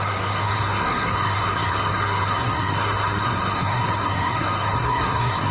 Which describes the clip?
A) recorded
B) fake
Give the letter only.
B